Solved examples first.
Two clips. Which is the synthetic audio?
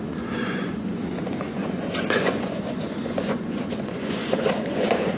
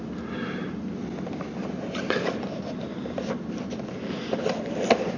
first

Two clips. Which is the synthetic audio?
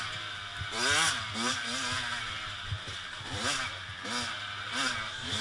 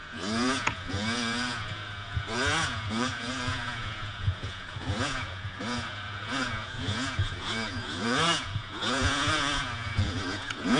second